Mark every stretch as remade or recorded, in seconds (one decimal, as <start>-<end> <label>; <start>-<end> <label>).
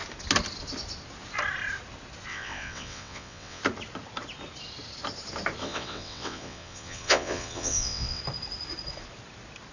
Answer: 0.0-2.3 recorded; 2.3-3.6 remade; 3.6-5.6 recorded; 5.6-8.2 remade; 8.2-9.7 recorded